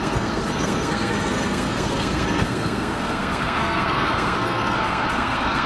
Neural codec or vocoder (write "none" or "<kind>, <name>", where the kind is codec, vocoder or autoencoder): codec, SNAC